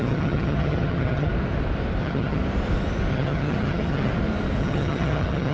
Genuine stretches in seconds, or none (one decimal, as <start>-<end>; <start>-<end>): 1.3-2.0; 2.4-3.1; 4.1-4.6